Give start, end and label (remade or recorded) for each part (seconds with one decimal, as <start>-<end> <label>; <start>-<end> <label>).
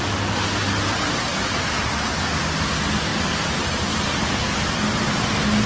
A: 0.0-5.7 recorded